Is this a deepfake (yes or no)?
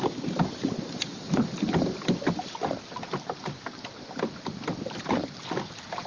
no